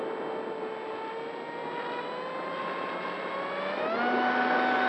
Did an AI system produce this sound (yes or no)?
no